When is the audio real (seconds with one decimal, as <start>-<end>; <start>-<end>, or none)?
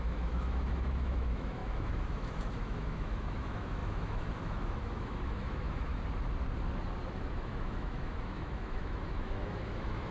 5.9-7.2